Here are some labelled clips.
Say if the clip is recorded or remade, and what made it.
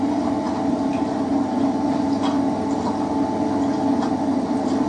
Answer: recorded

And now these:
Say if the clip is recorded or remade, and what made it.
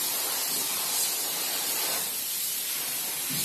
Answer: recorded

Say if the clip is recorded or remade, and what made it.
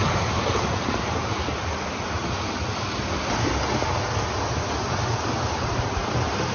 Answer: recorded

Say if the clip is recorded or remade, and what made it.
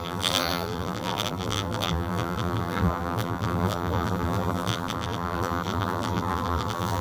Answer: remade, vocoder, BigVGAN v2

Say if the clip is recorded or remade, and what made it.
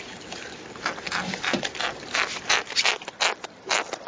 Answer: recorded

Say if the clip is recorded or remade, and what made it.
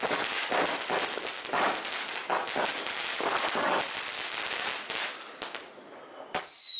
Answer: recorded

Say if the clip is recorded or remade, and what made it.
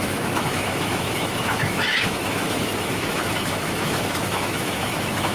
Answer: remade, autoencoder, DAC-VAE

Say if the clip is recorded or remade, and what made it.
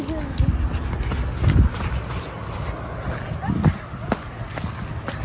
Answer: recorded